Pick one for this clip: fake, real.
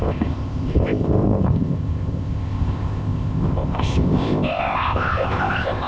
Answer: fake